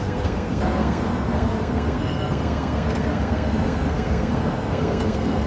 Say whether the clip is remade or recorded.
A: remade